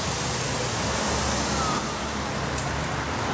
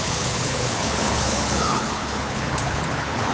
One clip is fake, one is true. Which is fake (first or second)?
second